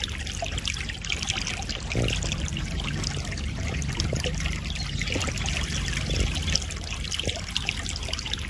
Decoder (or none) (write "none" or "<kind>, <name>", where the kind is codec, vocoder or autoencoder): none